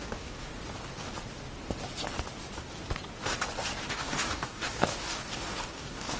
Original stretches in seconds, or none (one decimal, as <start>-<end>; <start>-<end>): 0.5-3.9